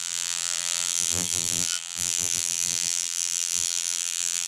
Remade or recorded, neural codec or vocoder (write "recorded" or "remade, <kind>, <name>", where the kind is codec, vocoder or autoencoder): remade, vocoder, BigVGAN v2